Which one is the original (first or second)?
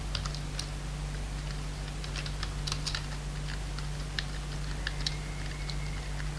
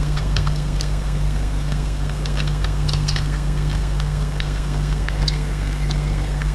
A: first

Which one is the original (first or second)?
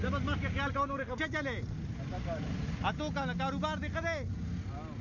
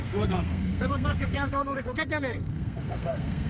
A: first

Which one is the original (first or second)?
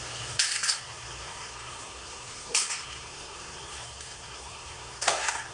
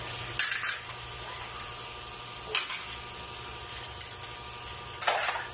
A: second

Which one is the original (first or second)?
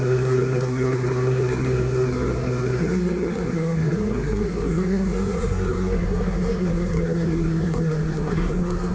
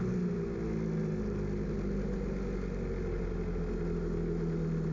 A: second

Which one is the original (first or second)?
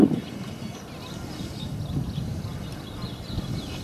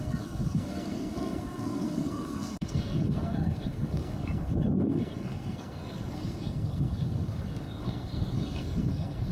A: first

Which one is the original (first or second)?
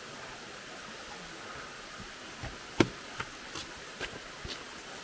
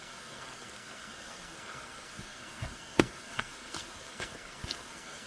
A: first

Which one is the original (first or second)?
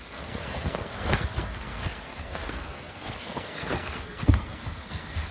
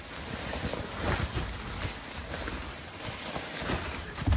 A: second